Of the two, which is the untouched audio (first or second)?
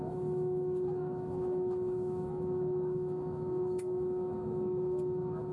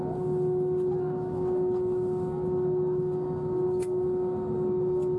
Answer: second